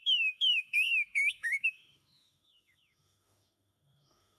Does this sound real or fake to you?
fake